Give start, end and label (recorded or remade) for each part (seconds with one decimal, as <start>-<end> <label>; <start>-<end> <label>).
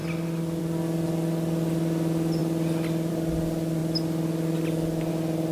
0.0-5.5 recorded